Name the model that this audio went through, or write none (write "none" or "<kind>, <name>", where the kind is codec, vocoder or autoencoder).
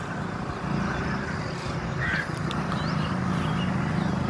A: none